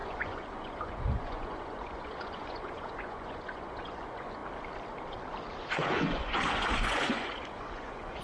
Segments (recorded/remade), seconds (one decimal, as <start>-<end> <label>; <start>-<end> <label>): 0.0-4.4 remade; 4.4-5.7 recorded; 5.7-8.2 remade

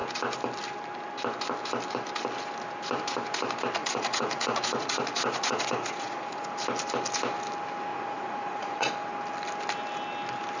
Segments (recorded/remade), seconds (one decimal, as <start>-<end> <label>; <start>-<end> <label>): 0.0-3.8 recorded; 3.8-6.4 remade; 6.4-7.9 recorded; 7.9-8.9 remade; 8.9-10.6 recorded

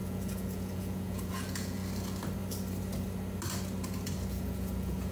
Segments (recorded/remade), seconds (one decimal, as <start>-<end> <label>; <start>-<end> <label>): 0.0-1.8 remade; 1.8-4.3 recorded; 4.3-5.1 remade

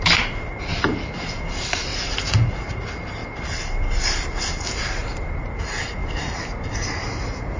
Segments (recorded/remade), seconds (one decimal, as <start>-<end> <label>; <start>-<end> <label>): 0.0-1.9 recorded; 1.9-2.5 remade; 2.5-7.6 recorded